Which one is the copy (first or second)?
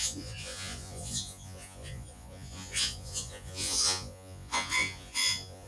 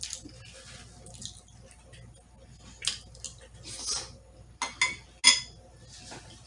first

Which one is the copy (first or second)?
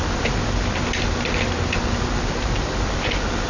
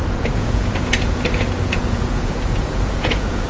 second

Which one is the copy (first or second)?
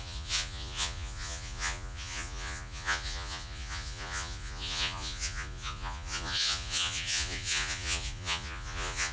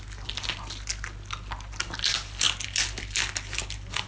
first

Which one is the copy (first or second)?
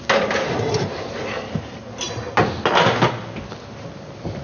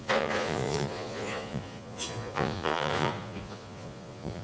second